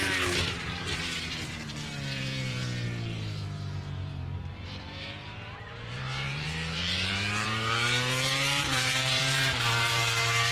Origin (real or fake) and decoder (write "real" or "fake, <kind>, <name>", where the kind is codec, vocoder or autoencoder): fake, vocoder, BigVGAN v2